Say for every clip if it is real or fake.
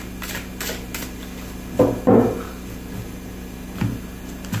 real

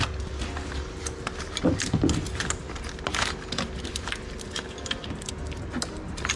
real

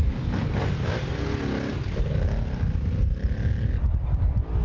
real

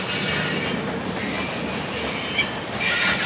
real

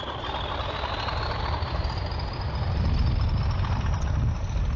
real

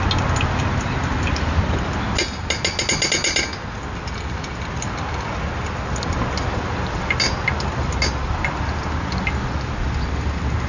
real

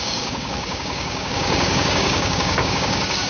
fake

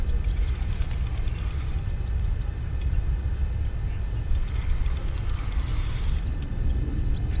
real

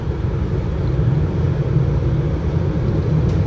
real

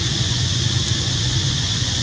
fake